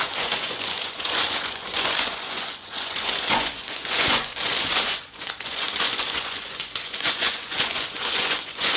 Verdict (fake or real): fake